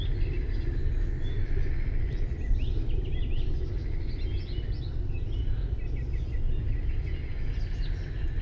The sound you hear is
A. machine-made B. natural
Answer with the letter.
B